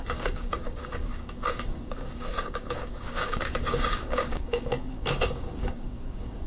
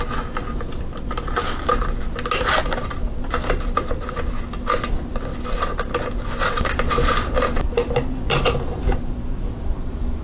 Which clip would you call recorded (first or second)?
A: second